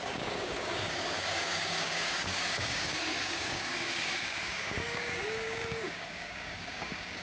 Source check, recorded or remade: remade